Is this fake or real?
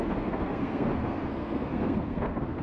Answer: fake